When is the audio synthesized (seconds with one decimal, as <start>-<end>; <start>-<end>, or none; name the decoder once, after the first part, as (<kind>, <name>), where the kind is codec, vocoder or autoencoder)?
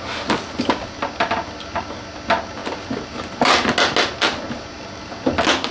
none